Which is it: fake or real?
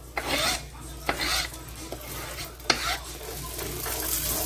real